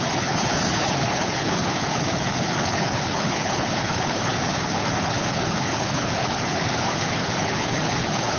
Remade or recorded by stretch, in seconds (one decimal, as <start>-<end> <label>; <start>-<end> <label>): 0.0-8.4 remade